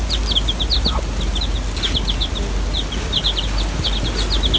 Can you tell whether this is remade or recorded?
recorded